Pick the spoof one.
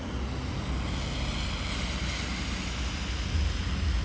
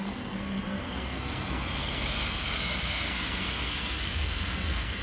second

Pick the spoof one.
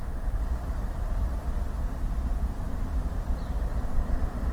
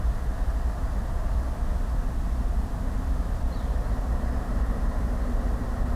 first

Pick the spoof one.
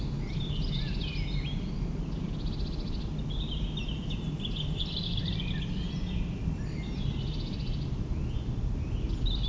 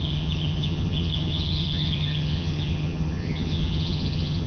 second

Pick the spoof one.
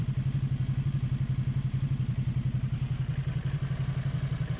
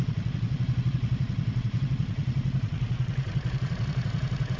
second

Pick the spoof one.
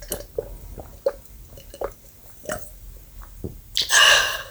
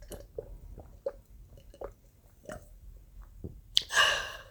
second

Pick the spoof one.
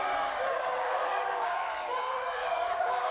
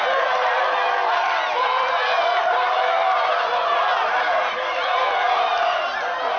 first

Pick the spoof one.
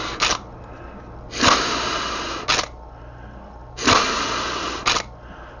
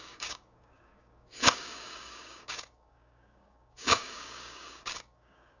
second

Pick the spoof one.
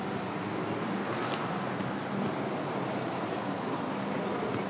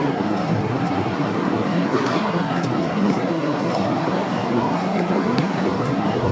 second